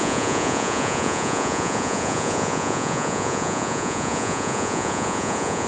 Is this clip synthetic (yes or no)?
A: yes